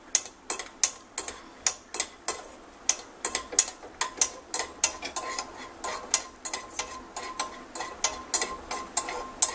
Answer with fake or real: real